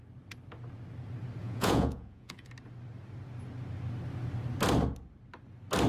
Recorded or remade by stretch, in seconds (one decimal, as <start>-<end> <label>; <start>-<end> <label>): 0.0-1.4 recorded; 1.4-2.5 remade; 2.5-5.9 recorded